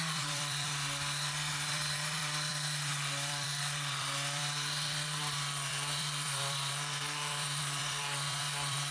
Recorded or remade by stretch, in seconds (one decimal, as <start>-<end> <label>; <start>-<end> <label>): 0.0-8.9 remade